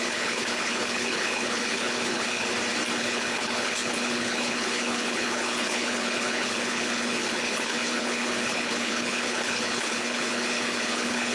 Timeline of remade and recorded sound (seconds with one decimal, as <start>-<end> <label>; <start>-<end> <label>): 0.0-2.5 remade; 2.5-3.0 recorded; 3.0-11.3 remade

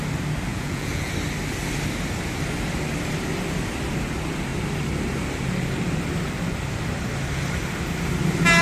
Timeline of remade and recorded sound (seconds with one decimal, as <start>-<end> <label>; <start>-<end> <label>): 0.0-0.5 recorded; 0.5-1.1 remade; 1.1-8.6 recorded

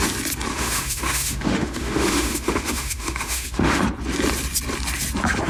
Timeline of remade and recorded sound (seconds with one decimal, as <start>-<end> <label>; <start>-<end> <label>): 0.0-0.5 recorded; 0.5-3.8 remade; 3.8-5.5 recorded

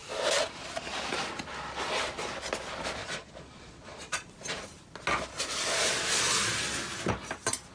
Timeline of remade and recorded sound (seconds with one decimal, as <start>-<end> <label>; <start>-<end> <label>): 0.0-3.0 recorded; 3.0-4.3 remade; 4.3-7.7 recorded